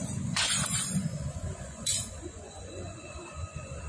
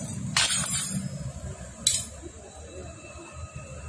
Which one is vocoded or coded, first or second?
first